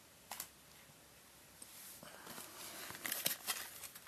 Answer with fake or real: real